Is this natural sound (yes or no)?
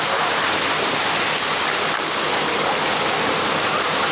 yes